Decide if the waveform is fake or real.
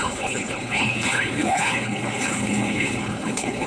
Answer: fake